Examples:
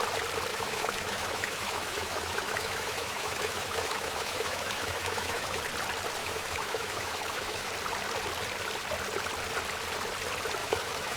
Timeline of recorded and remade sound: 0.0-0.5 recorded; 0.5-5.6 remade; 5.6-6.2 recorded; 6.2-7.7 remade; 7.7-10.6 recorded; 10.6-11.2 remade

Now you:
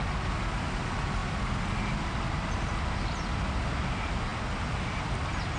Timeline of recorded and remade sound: 0.0-5.6 recorded

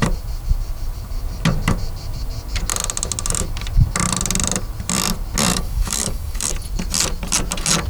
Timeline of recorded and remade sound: 0.0-5.5 recorded; 5.5-6.5 remade; 6.5-7.9 recorded

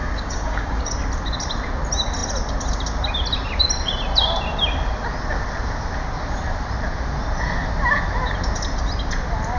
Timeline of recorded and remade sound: 0.0-0.8 remade; 0.8-9.6 recorded

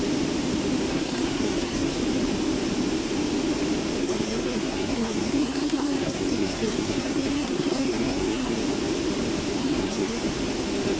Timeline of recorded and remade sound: 0.0-0.9 recorded; 0.9-2.0 remade; 2.0-4.0 recorded; 4.0-8.6 remade; 8.6-9.6 recorded; 9.6-10.2 remade; 10.2-11.0 recorded

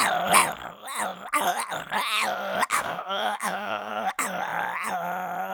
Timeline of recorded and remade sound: 0.0-2.7 recorded; 2.7-3.9 remade; 3.9-5.5 recorded